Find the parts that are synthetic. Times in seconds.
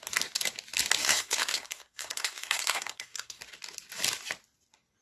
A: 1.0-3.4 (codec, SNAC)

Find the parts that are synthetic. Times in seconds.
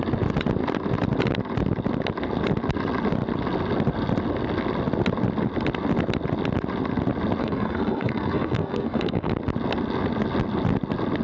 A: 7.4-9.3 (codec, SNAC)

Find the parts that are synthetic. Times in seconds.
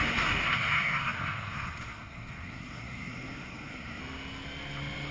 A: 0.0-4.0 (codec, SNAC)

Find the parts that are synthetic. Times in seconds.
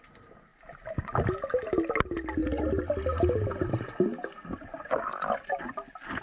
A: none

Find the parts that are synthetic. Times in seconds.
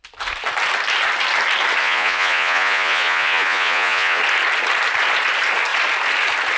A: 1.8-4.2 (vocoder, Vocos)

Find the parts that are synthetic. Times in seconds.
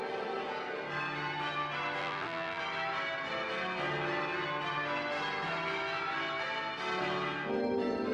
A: 2.0-2.6 (vocoder, BigVGAN v2)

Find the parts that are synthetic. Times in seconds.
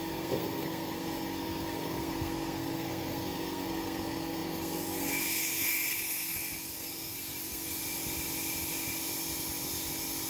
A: 0.0-7.8 (codec, SNAC)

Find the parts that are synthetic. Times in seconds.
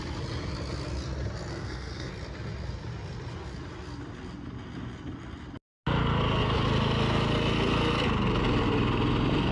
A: 1.5-2.1 (codec, SNAC)